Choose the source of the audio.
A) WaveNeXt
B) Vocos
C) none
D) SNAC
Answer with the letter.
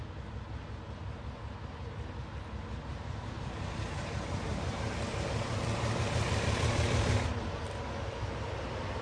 C